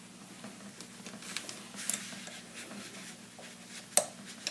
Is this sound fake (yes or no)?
no